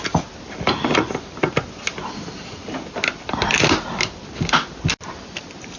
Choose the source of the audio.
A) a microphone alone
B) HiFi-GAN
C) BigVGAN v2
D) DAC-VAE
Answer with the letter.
A